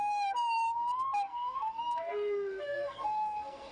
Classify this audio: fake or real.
fake